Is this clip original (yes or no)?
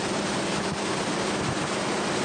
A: yes